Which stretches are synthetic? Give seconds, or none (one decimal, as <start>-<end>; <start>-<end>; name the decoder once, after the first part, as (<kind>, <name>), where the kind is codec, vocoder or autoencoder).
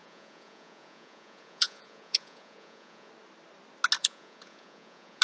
0.0-3.1 (vocoder, Vocos); 4.0-5.2